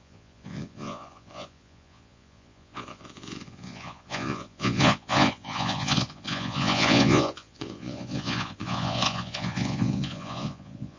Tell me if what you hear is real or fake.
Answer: fake